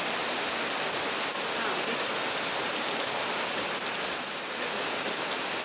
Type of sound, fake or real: real